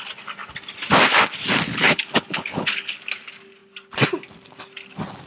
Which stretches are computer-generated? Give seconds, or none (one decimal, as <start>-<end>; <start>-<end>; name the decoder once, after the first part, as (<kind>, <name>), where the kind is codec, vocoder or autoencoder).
1.7-3.0 (codec, HILCodec)